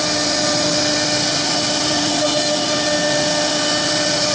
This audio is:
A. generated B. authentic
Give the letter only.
B